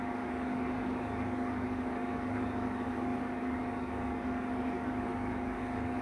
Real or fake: fake